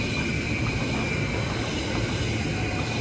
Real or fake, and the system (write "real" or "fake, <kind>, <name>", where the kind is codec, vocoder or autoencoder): real